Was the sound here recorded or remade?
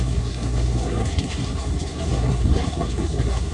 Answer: remade